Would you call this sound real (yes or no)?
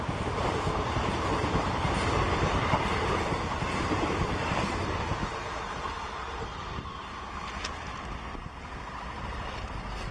yes